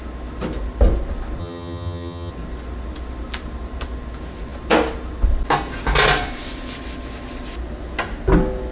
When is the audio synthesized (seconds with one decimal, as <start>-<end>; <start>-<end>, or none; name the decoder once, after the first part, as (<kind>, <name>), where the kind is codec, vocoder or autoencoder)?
1.4-2.3 (vocoder, HiFi-GAN)